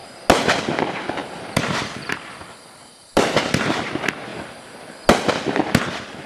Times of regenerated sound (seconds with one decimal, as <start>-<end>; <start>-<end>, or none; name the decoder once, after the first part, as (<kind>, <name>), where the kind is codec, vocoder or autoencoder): 1.2-3.9 (vocoder, BigVGAN v2)